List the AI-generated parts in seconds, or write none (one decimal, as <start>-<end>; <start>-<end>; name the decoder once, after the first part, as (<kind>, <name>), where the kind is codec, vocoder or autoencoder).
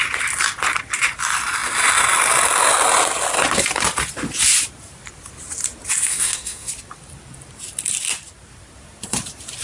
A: 6.1-6.7 (codec, SNAC)